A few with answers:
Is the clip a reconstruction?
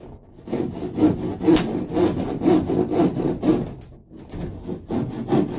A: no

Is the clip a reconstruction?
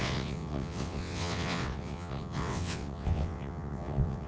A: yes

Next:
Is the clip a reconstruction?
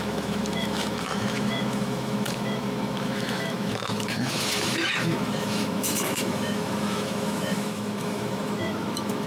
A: yes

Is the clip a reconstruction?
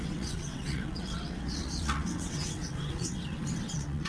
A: yes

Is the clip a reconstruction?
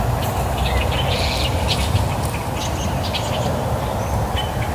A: no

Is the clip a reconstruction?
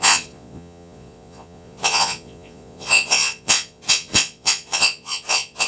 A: yes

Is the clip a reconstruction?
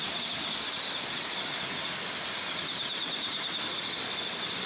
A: yes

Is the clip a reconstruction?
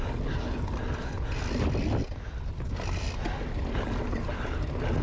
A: no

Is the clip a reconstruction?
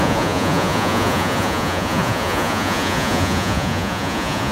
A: yes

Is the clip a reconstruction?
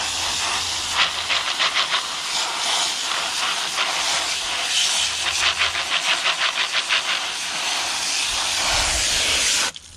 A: no